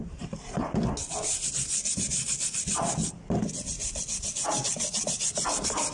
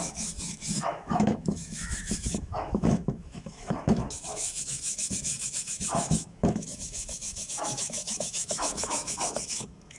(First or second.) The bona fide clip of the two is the first